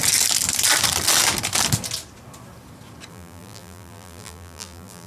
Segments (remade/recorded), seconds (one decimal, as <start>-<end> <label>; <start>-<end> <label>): 0.0-3.1 recorded; 3.1-5.1 remade